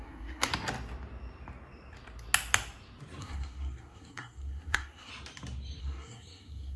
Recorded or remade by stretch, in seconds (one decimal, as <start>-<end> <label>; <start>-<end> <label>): 0.0-0.5 remade; 0.5-3.2 recorded; 3.2-5.1 remade; 5.1-5.8 recorded; 5.8-6.8 remade